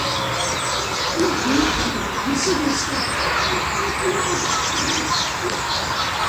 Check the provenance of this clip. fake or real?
real